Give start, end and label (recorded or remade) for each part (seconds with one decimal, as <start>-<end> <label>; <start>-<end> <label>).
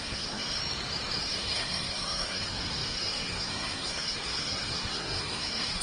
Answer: 0.0-0.6 remade; 0.6-1.2 recorded; 1.2-5.8 remade